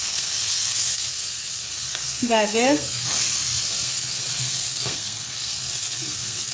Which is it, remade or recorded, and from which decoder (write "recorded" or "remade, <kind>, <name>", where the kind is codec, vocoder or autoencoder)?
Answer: remade, codec, SNAC